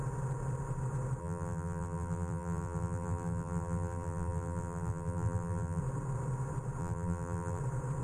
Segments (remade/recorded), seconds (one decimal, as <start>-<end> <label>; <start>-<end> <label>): 0.0-1.2 recorded; 1.2-5.8 remade; 5.8-6.8 recorded; 6.8-7.6 remade; 7.6-8.0 recorded